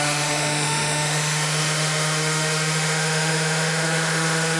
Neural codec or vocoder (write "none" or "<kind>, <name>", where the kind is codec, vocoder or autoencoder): autoencoder, DAC-VAE